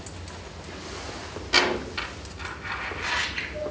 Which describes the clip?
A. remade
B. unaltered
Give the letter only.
B